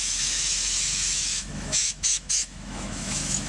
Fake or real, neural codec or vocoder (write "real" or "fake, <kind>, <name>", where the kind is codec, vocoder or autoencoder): fake, autoencoder, DAC-VAE